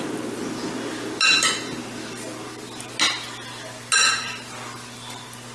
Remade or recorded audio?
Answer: recorded